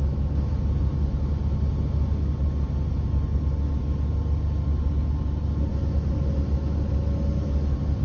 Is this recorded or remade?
recorded